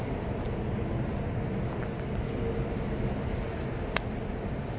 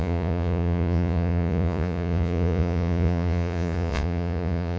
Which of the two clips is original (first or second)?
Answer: first